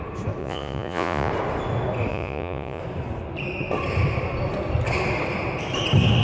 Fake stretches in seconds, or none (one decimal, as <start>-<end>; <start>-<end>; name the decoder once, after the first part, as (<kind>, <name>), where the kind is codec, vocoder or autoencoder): 0.4-1.3 (vocoder, Vocos); 2.1-2.8